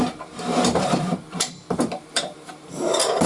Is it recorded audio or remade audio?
remade